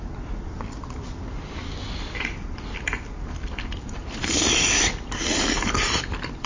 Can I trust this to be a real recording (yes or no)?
no